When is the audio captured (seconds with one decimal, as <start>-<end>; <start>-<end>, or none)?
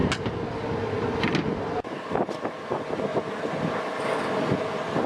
0.0-3.1; 3.7-5.1